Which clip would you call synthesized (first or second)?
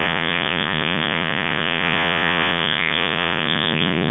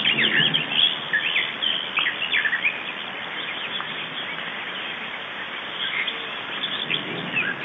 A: first